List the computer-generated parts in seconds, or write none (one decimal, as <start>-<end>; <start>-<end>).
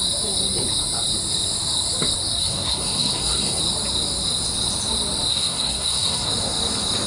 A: 2.4-3.6; 5.3-6.3